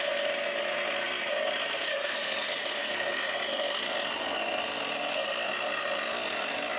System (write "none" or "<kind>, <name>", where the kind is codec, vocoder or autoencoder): none